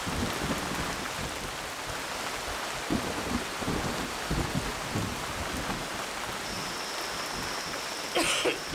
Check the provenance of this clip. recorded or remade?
recorded